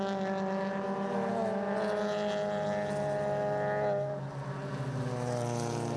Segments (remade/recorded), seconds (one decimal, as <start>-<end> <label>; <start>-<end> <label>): 0.0-6.0 recorded